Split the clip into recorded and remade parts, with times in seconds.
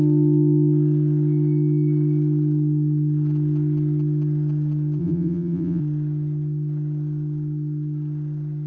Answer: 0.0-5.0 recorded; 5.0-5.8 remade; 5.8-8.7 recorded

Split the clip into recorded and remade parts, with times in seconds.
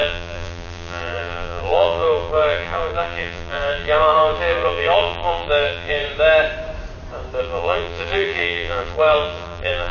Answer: 0.0-6.0 remade; 6.0-7.4 recorded; 7.4-9.9 remade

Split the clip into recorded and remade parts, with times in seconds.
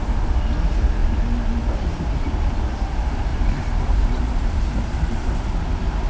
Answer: 0.0-3.3 recorded; 3.3-5.4 remade; 5.4-6.1 recorded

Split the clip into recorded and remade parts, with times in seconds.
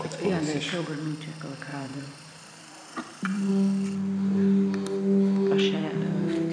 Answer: 0.0-1.7 recorded; 1.7-3.5 remade; 3.5-6.5 recorded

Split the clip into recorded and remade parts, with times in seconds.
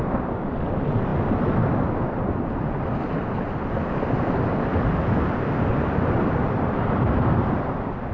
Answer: 0.0-5.7 recorded; 5.7-8.1 remade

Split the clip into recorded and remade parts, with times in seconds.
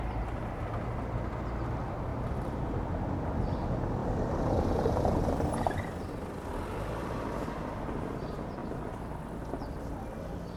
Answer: 0.0-2.1 recorded; 2.1-2.7 remade; 2.7-4.0 recorded; 4.0-4.9 remade; 4.9-8.6 recorded; 8.6-10.2 remade; 10.2-10.6 recorded